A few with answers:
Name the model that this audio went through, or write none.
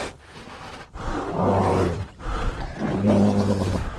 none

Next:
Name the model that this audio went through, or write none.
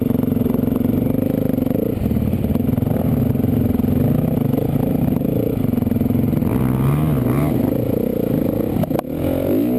none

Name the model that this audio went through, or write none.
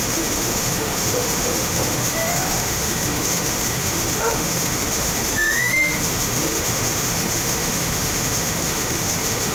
autoencoder, DAC-VAE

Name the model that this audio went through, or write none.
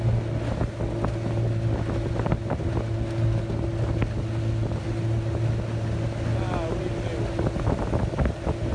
none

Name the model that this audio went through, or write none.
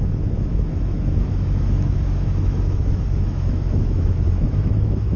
autoencoder, DAC-VAE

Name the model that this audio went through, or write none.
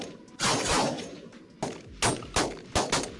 none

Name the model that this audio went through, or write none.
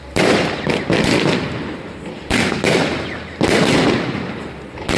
none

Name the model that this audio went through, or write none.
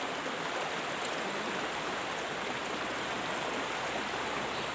none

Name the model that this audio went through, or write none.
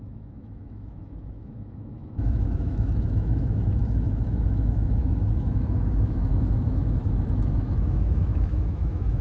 autoencoder, DAC-VAE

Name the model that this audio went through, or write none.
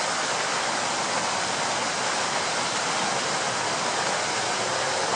none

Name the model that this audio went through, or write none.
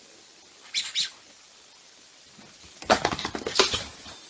none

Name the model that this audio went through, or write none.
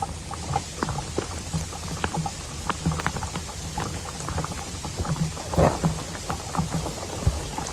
none